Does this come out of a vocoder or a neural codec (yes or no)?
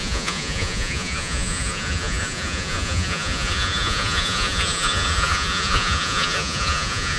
yes